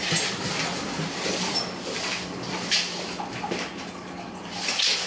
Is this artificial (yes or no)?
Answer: no